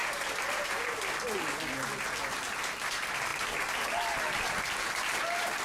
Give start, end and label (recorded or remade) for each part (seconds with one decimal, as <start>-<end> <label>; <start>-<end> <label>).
0.0-1.4 remade; 1.4-5.6 recorded